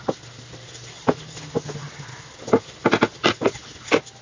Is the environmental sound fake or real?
real